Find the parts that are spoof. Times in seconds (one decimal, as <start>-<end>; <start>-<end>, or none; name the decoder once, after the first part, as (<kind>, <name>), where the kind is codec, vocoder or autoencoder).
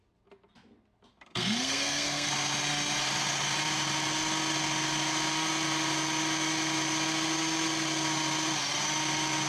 1.1-2.3 (codec, SNAC)